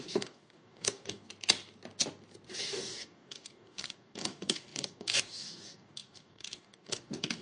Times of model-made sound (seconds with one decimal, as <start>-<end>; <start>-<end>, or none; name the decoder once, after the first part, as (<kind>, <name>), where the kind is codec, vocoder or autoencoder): 0.0-1.3 (codec, DAC); 2.6-7.4